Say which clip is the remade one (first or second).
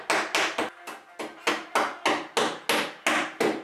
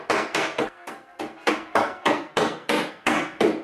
second